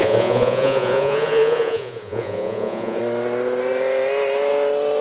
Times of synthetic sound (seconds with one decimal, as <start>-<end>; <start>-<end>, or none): 0.0-3.0